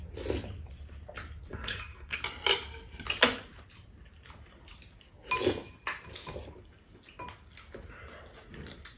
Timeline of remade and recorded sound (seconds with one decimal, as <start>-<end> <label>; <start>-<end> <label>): 0.0-1.5 recorded; 1.5-2.2 remade; 2.2-9.0 recorded